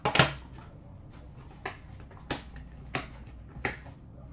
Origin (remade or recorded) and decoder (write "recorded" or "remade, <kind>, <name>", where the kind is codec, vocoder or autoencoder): recorded